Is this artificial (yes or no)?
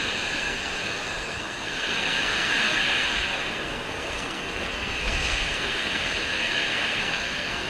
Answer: yes